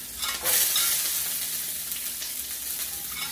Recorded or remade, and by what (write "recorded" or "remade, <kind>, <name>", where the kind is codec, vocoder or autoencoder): recorded